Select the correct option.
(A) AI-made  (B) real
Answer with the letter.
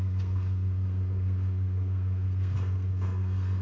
A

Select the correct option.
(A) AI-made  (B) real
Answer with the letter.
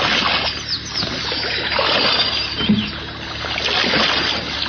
B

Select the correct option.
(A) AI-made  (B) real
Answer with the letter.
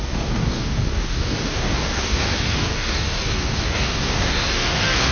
A